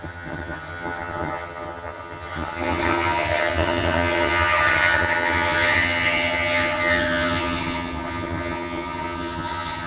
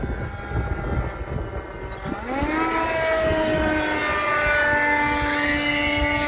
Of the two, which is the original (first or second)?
second